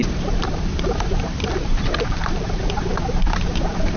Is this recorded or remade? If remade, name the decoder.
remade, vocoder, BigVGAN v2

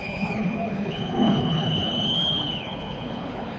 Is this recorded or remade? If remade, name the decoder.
remade, codec, HILCodec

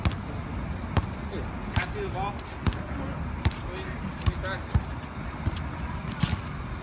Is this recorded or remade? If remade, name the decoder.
recorded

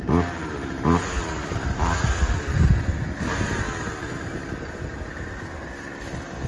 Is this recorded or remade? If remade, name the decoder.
recorded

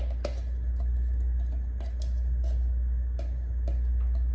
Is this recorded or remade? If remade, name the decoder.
recorded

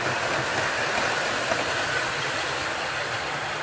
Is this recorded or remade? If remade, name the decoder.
recorded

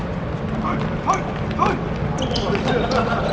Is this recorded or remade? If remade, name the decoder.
recorded